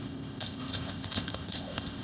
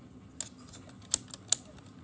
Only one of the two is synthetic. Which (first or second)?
first